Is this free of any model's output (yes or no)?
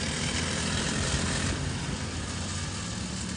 yes